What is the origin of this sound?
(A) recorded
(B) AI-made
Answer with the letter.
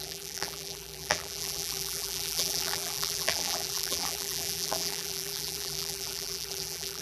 B